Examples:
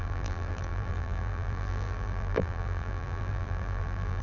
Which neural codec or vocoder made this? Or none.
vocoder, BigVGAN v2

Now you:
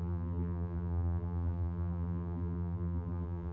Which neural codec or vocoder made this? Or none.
vocoder, BigVGAN v2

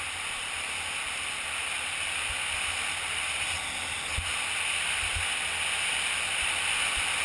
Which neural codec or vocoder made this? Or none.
none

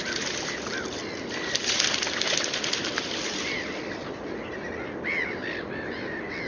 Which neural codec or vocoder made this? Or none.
none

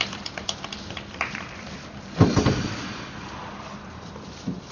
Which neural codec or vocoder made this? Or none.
vocoder, BigVGAN v2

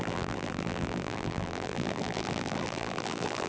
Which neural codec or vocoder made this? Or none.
vocoder, BigVGAN v2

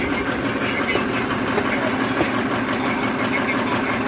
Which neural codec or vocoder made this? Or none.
none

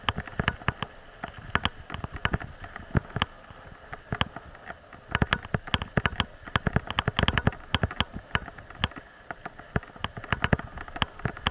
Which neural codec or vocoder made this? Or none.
none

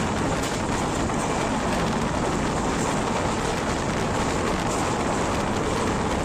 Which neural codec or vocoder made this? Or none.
none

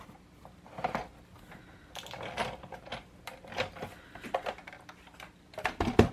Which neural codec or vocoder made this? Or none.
none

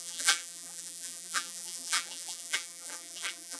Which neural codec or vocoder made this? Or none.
vocoder, BigVGAN v2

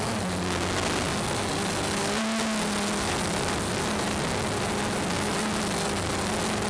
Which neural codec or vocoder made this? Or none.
none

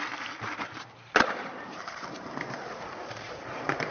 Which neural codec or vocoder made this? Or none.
vocoder, BigVGAN v2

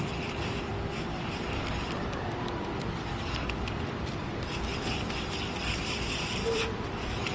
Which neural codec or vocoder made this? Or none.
vocoder, BigVGAN v2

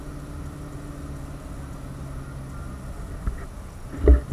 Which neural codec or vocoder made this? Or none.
none